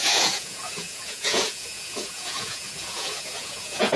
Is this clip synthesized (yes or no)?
yes